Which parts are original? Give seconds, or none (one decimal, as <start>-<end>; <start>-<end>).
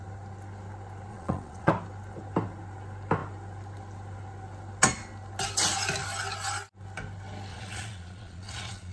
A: 0.0-1.1; 1.7-7.5